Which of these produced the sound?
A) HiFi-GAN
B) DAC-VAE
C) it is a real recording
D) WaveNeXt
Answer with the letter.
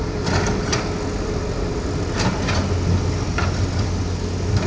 C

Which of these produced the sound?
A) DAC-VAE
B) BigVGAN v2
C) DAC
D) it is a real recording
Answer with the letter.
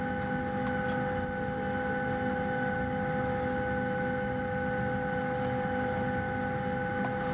D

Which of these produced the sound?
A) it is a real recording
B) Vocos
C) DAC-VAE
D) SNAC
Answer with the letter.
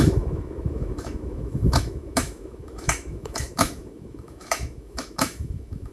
C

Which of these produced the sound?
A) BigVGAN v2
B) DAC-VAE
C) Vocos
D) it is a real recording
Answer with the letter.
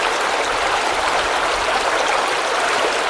D